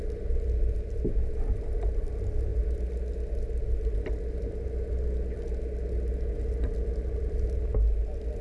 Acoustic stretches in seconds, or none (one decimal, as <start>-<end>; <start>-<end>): 0.0-8.4